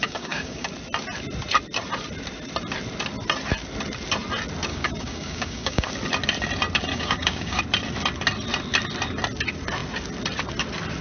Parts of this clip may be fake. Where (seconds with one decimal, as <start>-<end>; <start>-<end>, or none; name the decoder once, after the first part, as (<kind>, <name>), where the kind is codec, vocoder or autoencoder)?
0.0-0.7 (codec, DAC); 4.7-5.9; 6.9-7.6